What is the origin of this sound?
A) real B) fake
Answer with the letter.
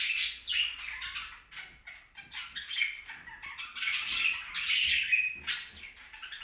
A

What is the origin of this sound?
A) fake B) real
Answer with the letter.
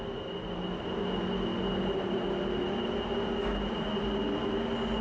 B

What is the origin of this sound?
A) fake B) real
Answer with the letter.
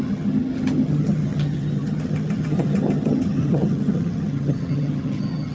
A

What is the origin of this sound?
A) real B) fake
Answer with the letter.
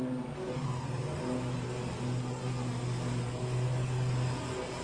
A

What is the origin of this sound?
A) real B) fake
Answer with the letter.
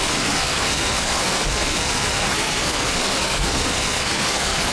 B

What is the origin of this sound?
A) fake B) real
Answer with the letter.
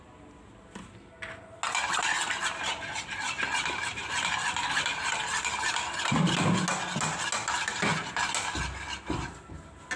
B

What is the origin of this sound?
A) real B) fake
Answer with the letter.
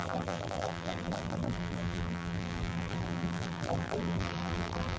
B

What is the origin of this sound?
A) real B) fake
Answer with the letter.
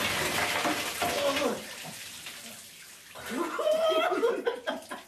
A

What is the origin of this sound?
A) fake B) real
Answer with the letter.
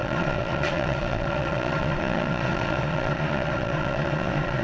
A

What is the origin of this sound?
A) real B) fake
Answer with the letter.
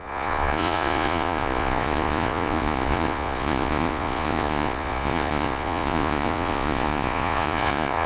B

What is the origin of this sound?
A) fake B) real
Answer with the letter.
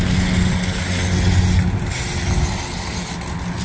B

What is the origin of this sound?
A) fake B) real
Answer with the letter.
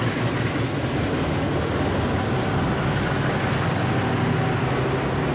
B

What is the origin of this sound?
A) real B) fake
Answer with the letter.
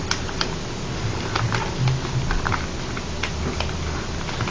A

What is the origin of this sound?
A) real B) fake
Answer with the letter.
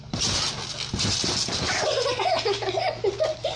A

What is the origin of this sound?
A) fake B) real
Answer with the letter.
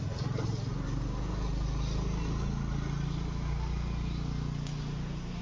B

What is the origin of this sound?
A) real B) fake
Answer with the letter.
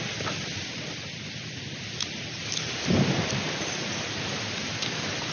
A